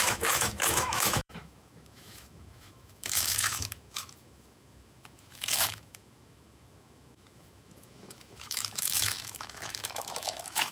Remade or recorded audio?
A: remade